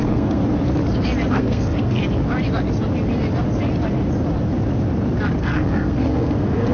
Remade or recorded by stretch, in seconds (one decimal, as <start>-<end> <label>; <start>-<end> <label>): 0.0-0.4 remade; 0.4-1.3 recorded; 1.3-2.0 remade; 2.0-5.4 recorded; 5.4-6.7 remade